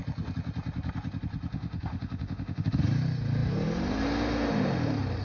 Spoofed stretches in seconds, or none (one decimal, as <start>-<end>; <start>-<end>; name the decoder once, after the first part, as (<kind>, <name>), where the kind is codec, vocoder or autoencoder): 1.5-2.8 (autoencoder, DAC-VAE)